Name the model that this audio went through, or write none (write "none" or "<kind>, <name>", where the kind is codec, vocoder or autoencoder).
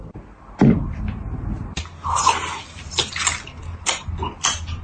none